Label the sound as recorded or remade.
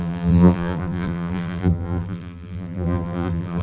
remade